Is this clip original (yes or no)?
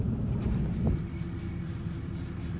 yes